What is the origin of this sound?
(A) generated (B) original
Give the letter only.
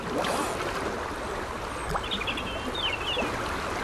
B